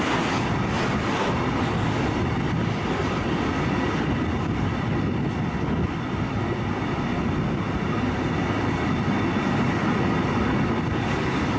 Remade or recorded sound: recorded